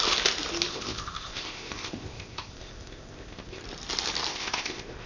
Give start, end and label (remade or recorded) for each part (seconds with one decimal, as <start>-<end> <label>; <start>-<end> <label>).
0.0-0.7 recorded; 0.7-3.6 remade; 3.6-4.3 recorded; 4.3-5.1 remade